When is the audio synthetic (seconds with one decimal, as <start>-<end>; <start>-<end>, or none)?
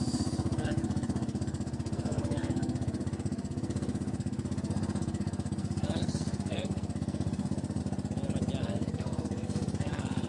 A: 0.0-7.8; 8.6-10.3